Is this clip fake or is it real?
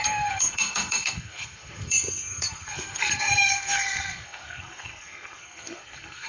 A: fake